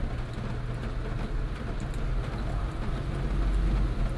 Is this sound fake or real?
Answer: real